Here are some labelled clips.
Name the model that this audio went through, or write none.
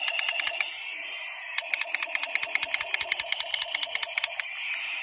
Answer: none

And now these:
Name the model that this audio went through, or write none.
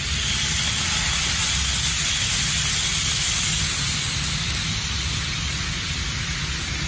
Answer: none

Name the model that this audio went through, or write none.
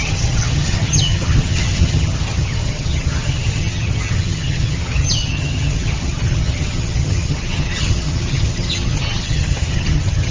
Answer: vocoder, HiFi-GAN